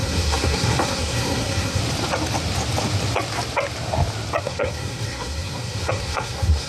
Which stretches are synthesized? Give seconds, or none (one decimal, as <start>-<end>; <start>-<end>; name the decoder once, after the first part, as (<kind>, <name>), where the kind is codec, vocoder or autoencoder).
0.0-1.8 (codec, SNAC); 4.4-6.7